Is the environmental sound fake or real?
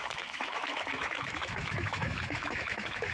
fake